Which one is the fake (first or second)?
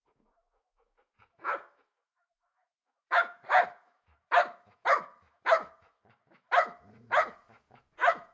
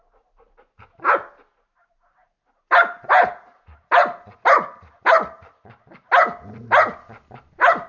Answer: first